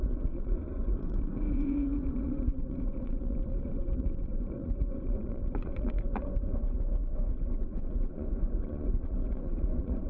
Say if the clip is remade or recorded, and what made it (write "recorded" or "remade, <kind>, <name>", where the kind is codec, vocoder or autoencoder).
remade, vocoder, Vocos